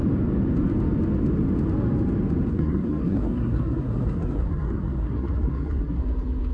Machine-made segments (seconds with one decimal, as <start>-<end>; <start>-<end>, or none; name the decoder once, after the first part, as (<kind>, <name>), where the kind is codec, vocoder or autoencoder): 2.5-6.0 (codec, SNAC)